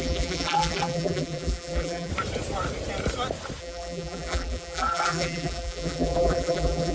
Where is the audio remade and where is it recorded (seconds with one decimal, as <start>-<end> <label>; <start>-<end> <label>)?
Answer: 0.0-2.1 remade; 2.1-3.6 recorded; 3.6-6.9 remade